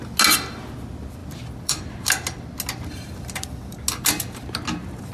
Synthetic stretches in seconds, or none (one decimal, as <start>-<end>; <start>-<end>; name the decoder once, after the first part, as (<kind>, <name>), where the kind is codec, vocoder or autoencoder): 1.2-1.8 (vocoder, BigVGAN v2); 2.9-3.7